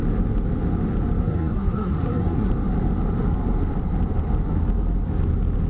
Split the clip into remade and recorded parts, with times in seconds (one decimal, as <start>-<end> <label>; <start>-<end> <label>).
0.0-1.2 recorded; 1.2-2.5 remade; 2.5-5.7 recorded